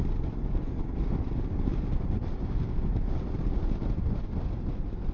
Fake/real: real